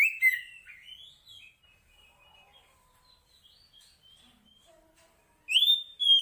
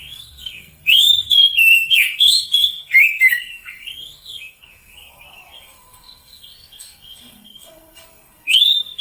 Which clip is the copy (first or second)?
second